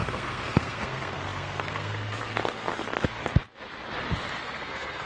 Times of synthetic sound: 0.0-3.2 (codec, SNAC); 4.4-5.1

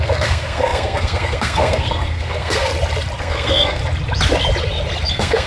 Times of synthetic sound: 0.0-2.7 (codec, SNAC); 3.2-3.8; 5.1-5.5

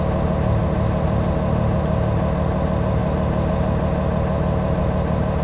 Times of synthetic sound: none

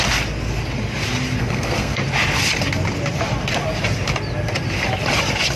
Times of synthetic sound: 1.4-2.0 (codec, SNAC)

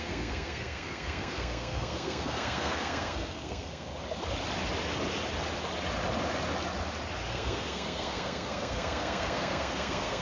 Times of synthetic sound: 0.0-3.9 (codec, SNAC); 7.3-10.2

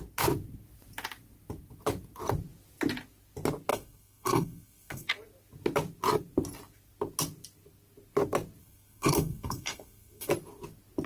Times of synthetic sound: 3.7-5.1 (codec, SNAC); 8.6-10.3